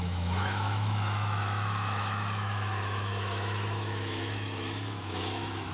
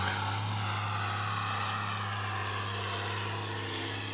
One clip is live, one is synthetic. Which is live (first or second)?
second